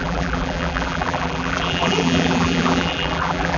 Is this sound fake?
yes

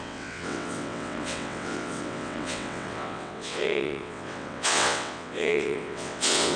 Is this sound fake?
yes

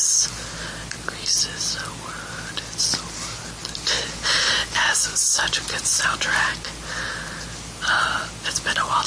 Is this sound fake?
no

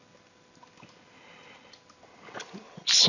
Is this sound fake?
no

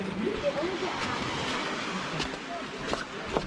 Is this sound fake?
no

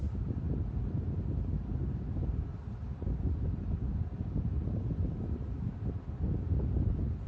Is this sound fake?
no